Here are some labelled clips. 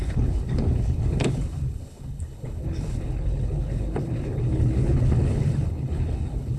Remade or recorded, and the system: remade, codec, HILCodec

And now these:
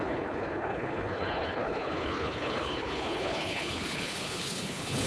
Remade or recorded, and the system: remade, codec, HILCodec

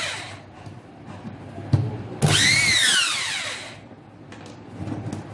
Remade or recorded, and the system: recorded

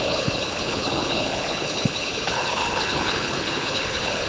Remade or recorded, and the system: remade, codec, HILCodec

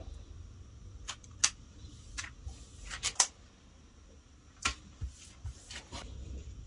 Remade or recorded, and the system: recorded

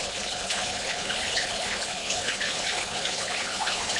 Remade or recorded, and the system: remade, codec, HILCodec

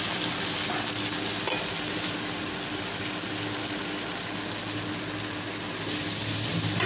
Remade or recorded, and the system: recorded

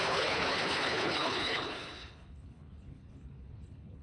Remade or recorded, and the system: remade, codec, HILCodec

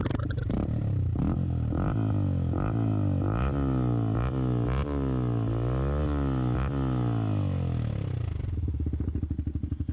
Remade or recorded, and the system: recorded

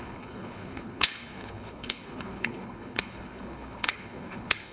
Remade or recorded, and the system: remade, codec, HILCodec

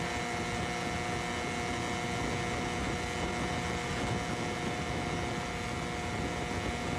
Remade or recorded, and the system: recorded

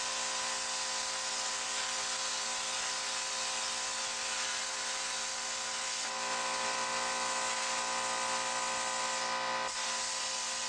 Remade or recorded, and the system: recorded